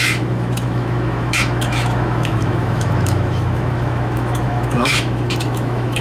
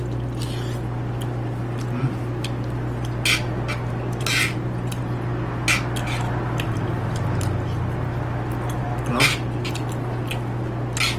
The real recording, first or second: second